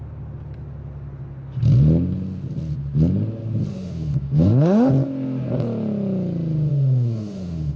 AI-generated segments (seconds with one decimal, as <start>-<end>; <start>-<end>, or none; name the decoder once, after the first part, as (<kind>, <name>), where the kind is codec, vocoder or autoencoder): 3.7-4.9 (autoencoder, DAC-VAE); 6.7-7.8